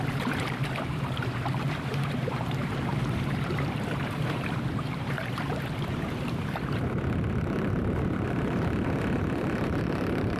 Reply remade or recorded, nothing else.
remade